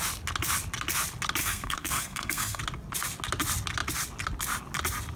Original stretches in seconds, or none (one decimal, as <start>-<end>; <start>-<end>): 0.0-1.4; 2.6-5.2